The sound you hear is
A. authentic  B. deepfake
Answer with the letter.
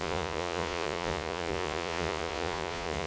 B